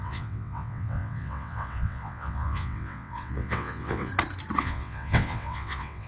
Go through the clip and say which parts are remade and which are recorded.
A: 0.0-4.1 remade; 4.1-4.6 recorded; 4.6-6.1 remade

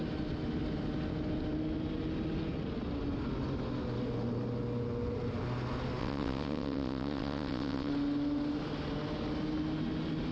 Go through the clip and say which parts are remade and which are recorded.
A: 0.0-6.0 recorded; 6.0-7.9 remade; 7.9-10.3 recorded

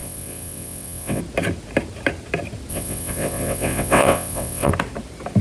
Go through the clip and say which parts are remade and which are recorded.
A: 0.0-1.2 remade; 1.2-2.7 recorded; 2.7-4.7 remade; 4.7-5.4 recorded

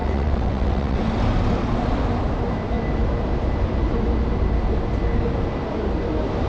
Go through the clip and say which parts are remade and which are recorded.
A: 0.0-1.0 remade; 1.0-6.5 recorded